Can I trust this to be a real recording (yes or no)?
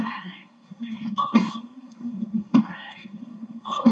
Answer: no